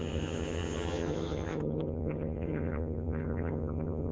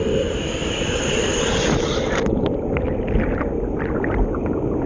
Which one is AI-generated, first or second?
first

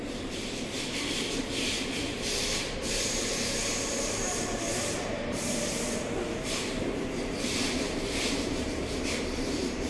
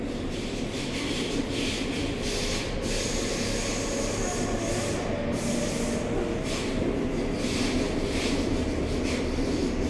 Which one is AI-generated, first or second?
first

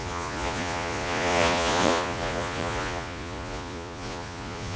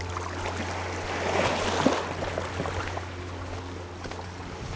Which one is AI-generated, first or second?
first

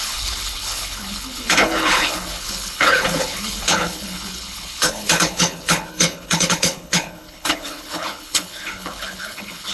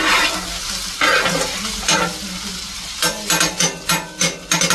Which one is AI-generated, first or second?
first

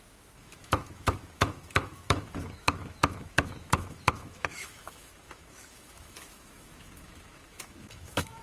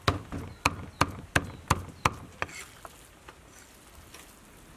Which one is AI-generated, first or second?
first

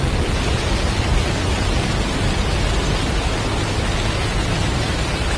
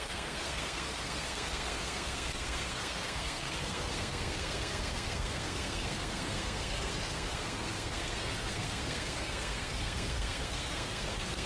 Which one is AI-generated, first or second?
second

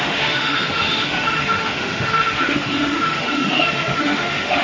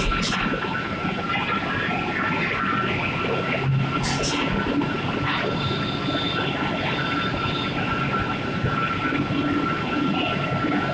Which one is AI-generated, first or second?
first